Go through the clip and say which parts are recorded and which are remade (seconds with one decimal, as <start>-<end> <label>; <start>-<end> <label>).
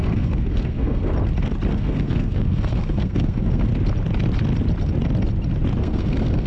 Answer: 0.0-1.1 remade; 1.1-1.7 recorded; 1.7-3.7 remade; 3.7-5.8 recorded; 5.8-6.5 remade